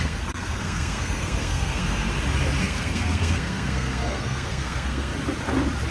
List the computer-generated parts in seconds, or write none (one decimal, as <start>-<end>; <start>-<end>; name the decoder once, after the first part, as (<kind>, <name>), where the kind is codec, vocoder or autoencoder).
0.0-2.1 (codec, SNAC); 2.6-5.1